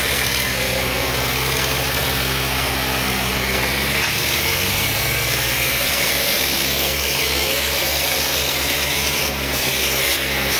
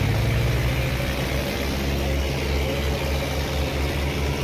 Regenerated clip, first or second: first